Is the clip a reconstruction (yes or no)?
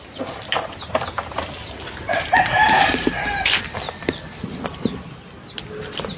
no